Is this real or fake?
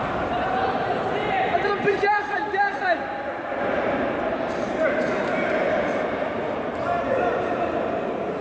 fake